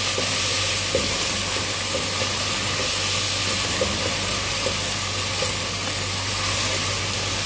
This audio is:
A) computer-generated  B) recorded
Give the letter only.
B